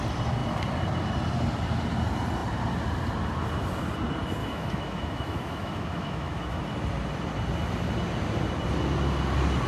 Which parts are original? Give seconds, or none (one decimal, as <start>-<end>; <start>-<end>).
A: 0.0-4.4; 6.6-9.7